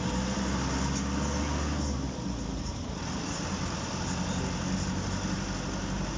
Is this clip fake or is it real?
real